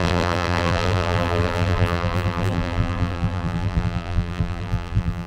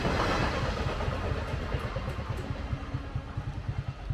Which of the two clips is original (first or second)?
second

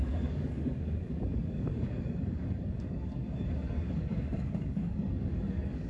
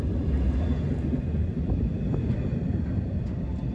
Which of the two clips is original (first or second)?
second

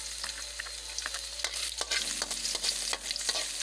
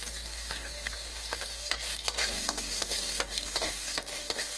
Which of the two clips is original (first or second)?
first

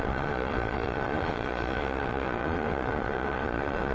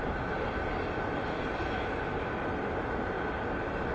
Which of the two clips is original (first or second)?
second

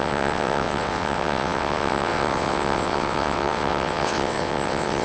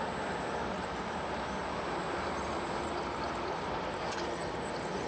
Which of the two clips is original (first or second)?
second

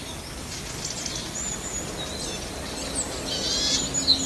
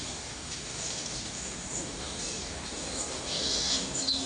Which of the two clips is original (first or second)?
first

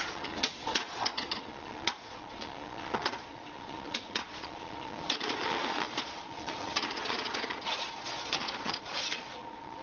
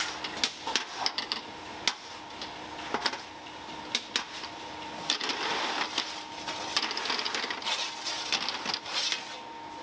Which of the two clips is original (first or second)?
second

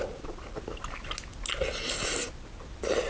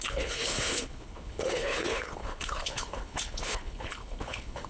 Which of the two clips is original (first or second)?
first